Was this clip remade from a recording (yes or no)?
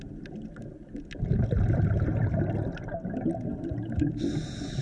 no